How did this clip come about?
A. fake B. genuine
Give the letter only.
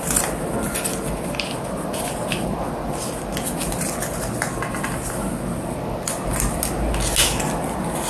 B